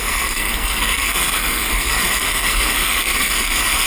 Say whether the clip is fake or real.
fake